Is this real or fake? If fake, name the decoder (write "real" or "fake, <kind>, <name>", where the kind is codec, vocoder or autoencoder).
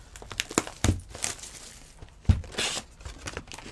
real